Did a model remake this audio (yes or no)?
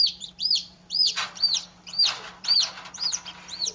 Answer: yes